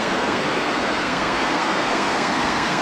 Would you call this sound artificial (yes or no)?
yes